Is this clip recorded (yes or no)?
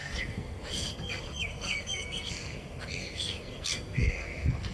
no